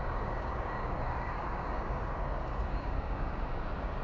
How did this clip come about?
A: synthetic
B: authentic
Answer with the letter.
A